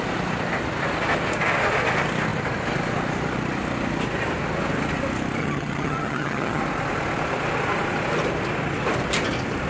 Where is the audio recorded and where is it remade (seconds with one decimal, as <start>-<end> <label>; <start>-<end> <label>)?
0.0-5.4 recorded; 5.4-6.6 remade; 6.6-9.7 recorded